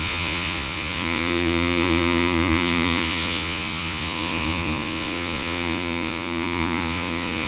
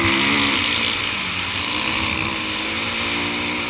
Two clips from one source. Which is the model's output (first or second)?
first